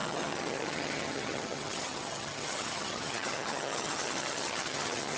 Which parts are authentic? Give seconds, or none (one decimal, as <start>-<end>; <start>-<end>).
none